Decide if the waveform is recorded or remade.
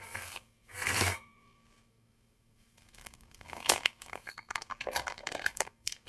remade